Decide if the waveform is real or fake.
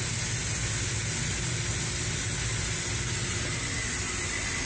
real